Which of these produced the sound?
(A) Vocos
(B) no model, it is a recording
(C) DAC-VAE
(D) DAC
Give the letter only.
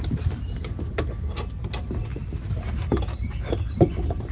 B